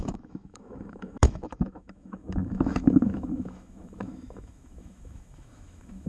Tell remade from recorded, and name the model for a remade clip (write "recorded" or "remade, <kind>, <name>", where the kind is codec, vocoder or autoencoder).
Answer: remade, autoencoder, DAC-VAE